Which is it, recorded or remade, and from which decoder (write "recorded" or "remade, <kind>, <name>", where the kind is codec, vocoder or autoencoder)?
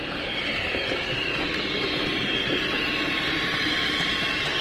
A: remade, vocoder, BigVGAN v2